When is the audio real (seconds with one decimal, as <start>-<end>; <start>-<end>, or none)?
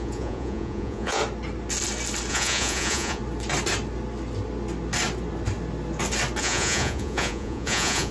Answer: 1.2-2.3; 3.2-6.4